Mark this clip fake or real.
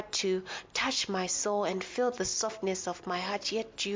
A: real